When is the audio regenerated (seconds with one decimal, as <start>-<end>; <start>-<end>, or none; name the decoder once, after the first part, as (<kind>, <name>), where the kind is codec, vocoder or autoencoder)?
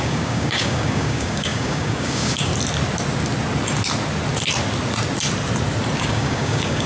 0.0-2.5 (codec, DAC); 6.0-6.9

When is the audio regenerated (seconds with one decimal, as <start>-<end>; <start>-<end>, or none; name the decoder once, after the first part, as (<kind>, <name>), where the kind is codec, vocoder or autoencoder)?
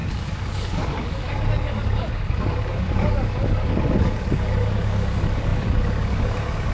0.0-6.7 (codec, DAC)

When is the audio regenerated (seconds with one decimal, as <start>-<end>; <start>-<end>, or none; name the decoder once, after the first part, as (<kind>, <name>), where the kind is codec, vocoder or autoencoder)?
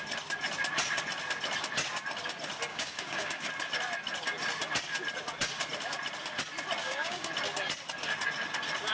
2.7-3.5 (codec, DAC); 6.8-7.3